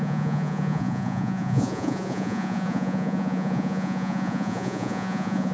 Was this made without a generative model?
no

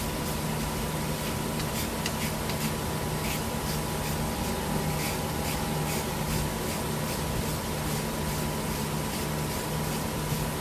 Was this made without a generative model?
yes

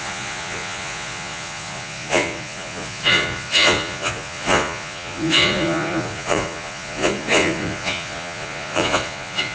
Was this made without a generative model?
no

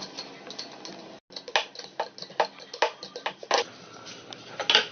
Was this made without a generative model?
yes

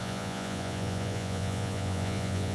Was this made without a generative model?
no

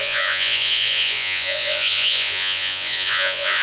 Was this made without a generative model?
no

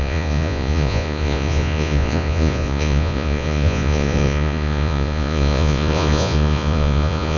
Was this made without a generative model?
no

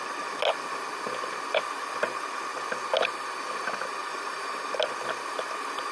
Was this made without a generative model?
yes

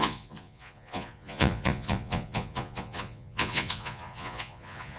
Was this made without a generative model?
no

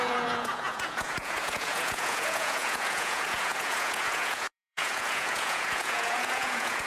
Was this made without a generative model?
no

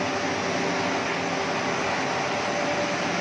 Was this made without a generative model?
yes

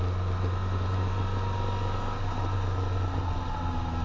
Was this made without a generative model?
yes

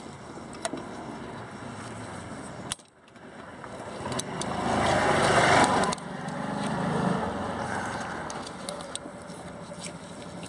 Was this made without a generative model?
yes